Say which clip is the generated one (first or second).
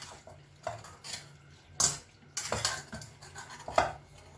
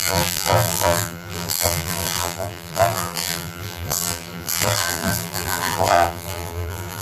second